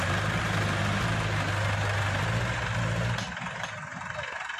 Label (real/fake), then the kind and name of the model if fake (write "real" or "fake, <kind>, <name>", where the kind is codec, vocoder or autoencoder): real